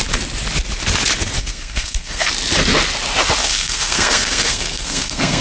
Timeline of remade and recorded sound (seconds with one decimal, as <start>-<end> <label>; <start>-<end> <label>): 0.0-1.4 recorded; 1.4-2.3 remade; 2.3-3.4 recorded; 3.4-5.4 remade